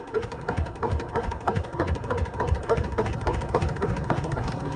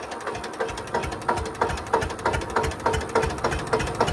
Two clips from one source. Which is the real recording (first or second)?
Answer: second